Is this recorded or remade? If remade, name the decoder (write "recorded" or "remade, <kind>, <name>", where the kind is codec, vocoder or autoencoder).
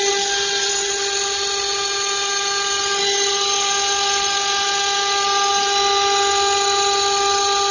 recorded